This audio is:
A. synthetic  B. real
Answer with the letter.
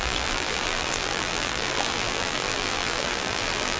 A